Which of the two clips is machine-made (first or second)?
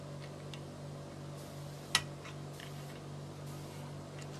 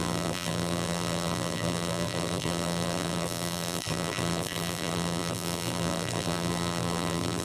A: second